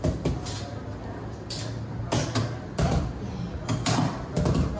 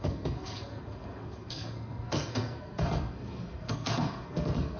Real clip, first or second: first